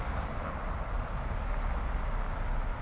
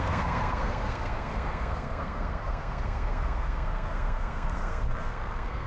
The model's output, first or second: second